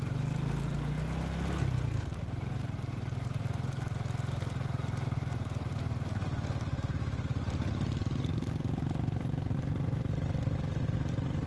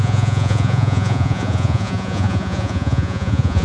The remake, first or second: second